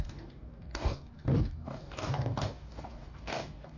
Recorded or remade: remade